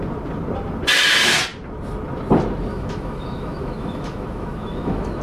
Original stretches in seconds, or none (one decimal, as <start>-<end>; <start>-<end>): 0.0-2.7